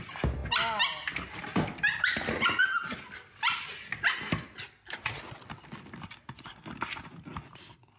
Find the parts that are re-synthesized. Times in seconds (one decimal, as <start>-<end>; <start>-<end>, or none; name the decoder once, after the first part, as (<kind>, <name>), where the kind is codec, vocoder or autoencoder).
none

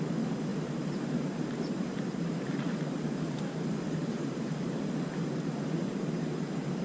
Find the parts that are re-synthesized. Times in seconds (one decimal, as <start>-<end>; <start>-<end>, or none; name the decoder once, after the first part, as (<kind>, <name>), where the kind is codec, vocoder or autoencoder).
0.5-4.6 (vocoder, BigVGAN v2)

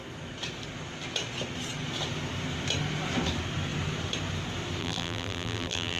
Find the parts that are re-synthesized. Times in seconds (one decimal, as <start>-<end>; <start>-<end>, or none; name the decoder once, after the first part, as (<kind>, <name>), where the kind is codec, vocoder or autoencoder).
4.8-6.0 (vocoder, BigVGAN v2)

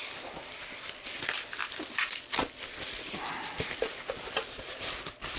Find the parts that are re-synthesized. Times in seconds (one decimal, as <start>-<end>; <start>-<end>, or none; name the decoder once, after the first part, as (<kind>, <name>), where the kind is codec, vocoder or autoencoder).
none

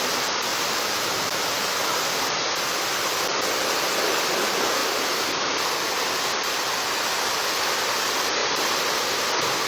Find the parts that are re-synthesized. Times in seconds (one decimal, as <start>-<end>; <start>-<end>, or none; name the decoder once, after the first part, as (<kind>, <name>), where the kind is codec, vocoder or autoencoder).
0.5-1.8 (vocoder, BigVGAN v2); 4.8-6.7

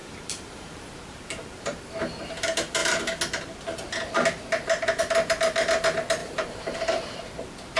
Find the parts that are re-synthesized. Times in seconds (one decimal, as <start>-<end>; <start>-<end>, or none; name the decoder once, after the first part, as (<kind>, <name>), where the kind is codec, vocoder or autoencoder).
0.0-2.2 (vocoder, BigVGAN v2); 6.2-7.2

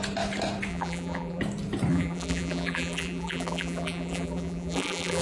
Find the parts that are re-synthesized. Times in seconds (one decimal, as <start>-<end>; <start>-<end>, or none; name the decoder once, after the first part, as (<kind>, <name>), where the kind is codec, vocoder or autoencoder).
0.7-1.4 (vocoder, BigVGAN v2); 1.9-5.2

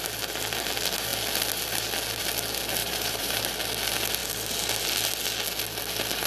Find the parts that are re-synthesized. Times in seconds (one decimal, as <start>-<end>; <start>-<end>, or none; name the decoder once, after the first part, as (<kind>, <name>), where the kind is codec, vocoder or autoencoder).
2.8-3.4 (vocoder, BigVGAN v2)